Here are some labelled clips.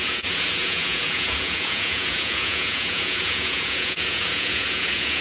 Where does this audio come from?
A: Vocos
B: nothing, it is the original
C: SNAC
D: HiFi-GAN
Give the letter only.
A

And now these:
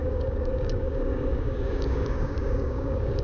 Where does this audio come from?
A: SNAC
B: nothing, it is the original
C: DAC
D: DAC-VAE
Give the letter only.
C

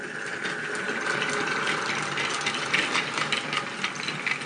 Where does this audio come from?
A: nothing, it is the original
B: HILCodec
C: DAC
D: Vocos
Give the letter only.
A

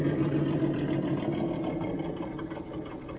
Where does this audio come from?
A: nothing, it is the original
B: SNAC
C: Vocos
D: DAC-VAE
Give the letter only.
A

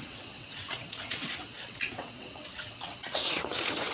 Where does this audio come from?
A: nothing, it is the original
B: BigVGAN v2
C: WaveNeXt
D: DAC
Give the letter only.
C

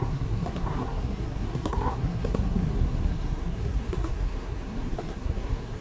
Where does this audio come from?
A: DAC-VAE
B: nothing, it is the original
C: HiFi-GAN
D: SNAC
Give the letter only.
D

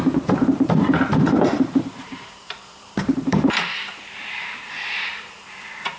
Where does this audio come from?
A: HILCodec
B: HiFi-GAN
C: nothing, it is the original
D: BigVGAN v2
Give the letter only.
D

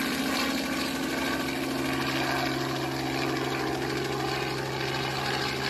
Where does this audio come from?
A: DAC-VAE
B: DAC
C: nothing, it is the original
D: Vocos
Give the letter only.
C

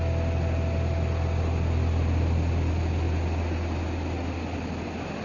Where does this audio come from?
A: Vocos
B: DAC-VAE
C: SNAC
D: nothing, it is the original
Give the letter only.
D